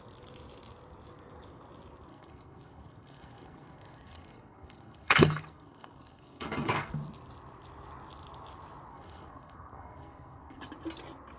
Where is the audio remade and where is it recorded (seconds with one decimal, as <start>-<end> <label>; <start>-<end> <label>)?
0.0-2.1 recorded; 2.1-6.9 remade; 6.9-8.9 recorded; 8.9-10.6 remade; 10.6-11.4 recorded